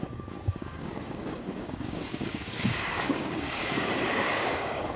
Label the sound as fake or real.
fake